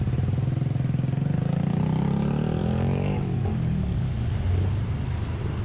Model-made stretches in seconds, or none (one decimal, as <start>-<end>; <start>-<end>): 2.6-4.0

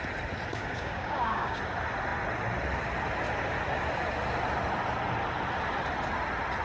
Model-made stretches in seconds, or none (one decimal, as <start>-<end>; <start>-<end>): 0.5-1.6

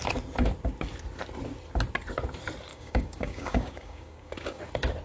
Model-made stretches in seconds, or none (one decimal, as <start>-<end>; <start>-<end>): 2.7-4.6

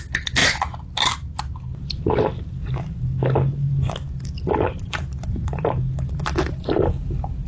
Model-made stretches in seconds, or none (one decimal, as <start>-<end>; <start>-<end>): none